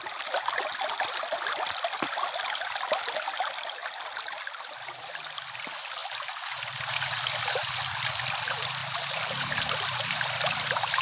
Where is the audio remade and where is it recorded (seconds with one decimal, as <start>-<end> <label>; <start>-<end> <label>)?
0.0-8.8 recorded; 8.8-9.7 remade; 9.7-11.0 recorded